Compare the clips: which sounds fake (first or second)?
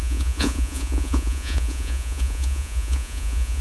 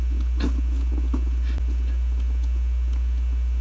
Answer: first